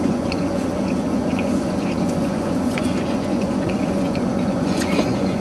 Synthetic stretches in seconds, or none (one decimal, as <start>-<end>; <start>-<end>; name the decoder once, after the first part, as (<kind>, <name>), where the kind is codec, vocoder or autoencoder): 0.0-5.4 (vocoder, Vocos)